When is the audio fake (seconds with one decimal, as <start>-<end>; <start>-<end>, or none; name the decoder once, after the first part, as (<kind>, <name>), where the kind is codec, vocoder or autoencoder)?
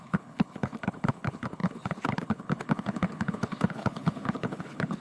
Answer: 0.0-5.0 (codec, HILCodec)